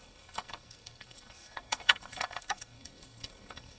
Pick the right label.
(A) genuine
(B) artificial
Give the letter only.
B